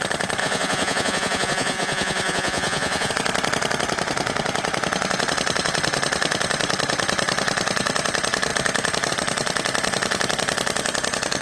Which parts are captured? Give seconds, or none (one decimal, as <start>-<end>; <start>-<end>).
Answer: 0.0-0.4; 3.1-11.4

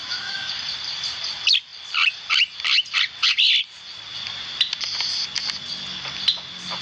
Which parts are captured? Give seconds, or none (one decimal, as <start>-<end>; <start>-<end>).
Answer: 0.5-6.8

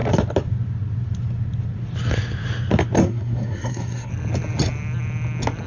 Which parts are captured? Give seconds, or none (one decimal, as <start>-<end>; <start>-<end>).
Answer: 0.0-3.0; 4.1-5.7

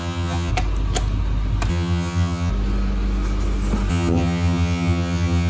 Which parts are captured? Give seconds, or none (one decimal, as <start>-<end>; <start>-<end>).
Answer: 0.5-1.7; 2.5-3.9

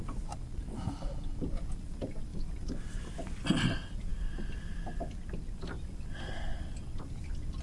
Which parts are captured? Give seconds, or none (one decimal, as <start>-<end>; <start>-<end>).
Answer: 0.0-7.6

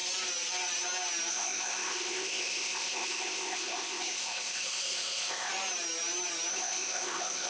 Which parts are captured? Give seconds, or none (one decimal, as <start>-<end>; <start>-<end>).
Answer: 0.0-1.3; 5.5-6.5